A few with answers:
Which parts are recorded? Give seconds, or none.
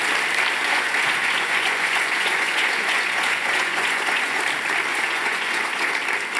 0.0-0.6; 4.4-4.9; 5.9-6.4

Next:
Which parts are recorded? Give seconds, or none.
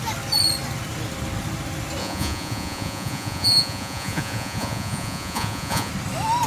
0.0-2.0; 5.9-6.5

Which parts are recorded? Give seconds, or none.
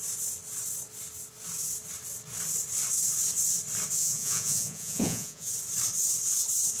0.0-4.0; 5.5-6.8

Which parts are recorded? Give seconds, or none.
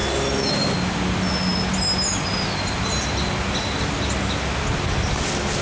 0.0-5.6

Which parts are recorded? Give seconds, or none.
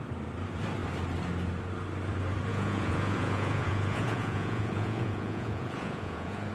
0.0-2.5